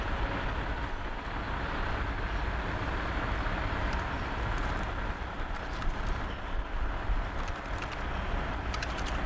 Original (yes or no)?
yes